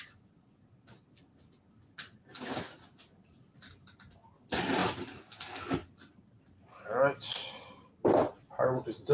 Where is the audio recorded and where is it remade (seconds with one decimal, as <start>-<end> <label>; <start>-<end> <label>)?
0.0-5.8 recorded; 5.8-8.5 remade; 8.5-9.1 recorded